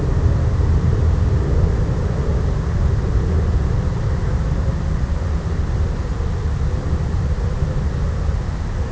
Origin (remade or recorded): recorded